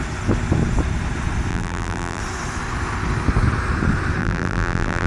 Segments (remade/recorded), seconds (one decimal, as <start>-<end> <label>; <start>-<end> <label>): 0.0-1.5 recorded; 1.5-2.2 remade; 2.2-4.2 recorded; 4.2-5.1 remade